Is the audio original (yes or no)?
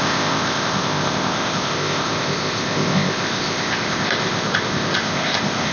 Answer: no